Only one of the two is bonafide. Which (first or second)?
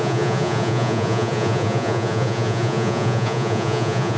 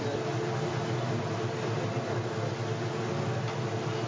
second